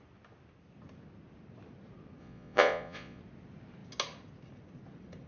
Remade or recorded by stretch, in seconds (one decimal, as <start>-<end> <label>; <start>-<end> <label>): 0.0-2.2 recorded; 2.2-3.2 remade; 3.2-5.3 recorded

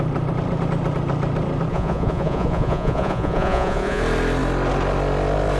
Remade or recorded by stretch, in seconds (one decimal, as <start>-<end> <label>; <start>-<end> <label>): 0.0-1.7 recorded; 1.7-4.0 remade; 4.0-5.6 recorded

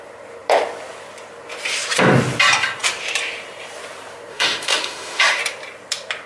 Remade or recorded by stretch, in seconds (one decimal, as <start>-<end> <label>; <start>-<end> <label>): 0.0-4.3 recorded; 4.3-5.4 remade; 5.4-6.3 recorded